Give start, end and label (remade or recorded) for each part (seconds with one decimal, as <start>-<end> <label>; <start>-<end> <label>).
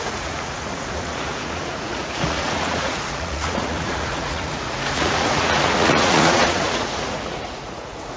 0.0-8.2 remade